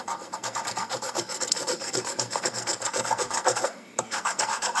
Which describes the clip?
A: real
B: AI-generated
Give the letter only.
B